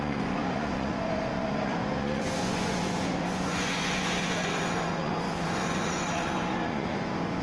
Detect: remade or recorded remade